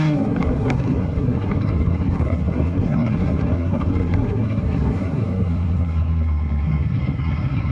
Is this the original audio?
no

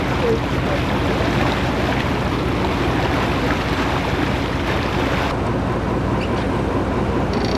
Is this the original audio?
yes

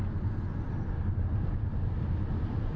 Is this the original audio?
yes